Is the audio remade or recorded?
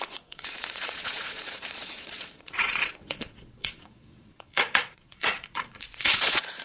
remade